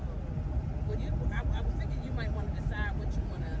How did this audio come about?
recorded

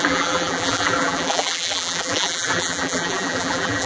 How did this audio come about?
remade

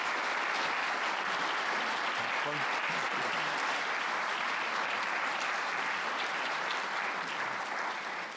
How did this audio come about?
remade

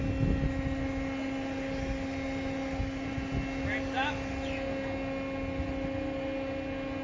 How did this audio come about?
recorded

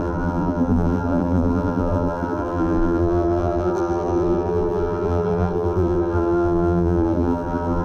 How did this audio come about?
remade